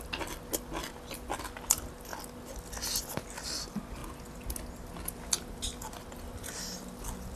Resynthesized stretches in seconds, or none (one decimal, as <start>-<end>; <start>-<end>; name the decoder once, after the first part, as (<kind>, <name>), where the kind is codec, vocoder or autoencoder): none